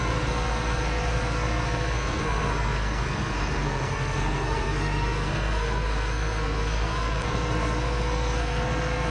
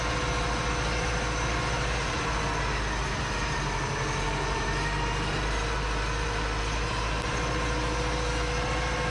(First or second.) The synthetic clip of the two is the first